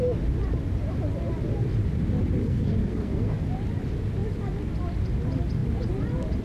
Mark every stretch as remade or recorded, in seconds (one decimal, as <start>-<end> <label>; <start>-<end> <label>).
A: 0.0-2.4 recorded; 2.4-3.5 remade; 3.5-6.4 recorded